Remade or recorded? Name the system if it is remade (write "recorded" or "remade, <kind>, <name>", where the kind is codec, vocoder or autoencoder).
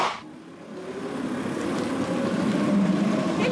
recorded